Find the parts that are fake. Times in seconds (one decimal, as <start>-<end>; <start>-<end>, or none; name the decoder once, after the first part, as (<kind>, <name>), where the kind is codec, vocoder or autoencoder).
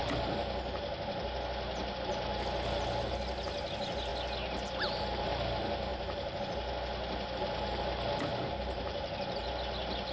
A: 5.9-6.4 (vocoder, BigVGAN v2); 8.3-9.5